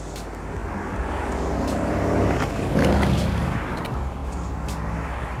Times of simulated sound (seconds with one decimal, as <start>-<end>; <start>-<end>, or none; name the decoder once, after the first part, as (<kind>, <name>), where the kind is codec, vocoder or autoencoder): 0.0-5.4 (codec, DAC)